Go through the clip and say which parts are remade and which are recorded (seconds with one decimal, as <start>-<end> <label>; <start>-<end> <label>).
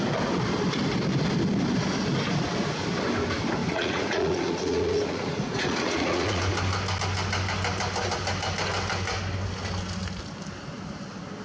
0.0-3.6 recorded; 3.6-6.4 remade; 6.4-11.4 recorded